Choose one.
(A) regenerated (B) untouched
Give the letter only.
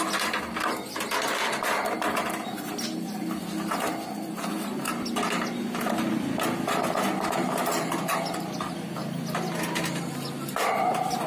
B